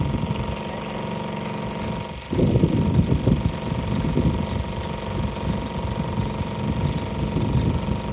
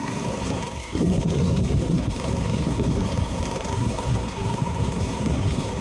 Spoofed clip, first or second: second